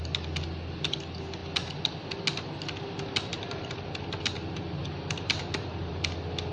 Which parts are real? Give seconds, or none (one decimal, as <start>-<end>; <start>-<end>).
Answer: 0.0-3.3; 3.9-4.8; 5.9-6.5